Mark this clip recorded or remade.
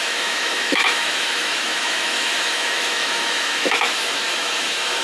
remade